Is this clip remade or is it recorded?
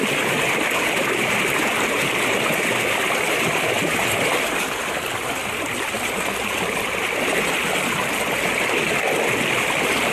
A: recorded